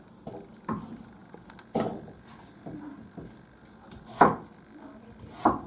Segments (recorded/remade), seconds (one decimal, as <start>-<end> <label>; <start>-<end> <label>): 0.0-5.7 recorded